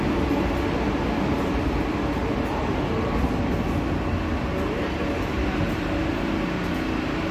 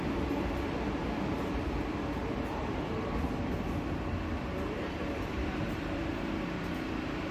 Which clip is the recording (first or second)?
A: first